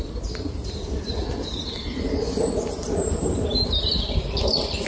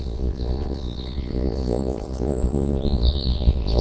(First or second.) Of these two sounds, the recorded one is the first